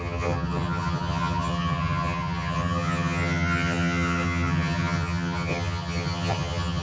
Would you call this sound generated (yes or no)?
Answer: yes